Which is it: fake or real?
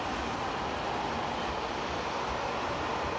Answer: real